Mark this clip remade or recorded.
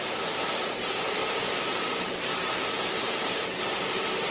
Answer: remade